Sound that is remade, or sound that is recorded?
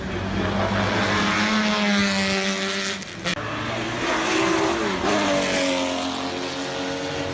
recorded